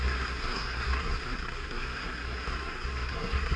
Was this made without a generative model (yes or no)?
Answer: no